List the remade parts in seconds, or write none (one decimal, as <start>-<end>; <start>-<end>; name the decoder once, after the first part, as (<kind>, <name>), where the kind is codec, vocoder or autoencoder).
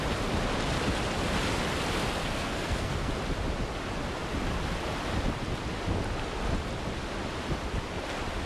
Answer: 2.2-3.1 (codec, SNAC)